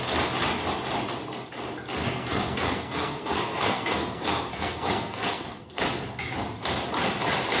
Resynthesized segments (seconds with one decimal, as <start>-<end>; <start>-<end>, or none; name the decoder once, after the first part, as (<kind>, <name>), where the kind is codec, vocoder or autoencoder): 2.0-5.8 (codec, SNAC)